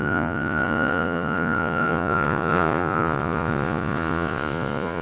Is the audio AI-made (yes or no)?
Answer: yes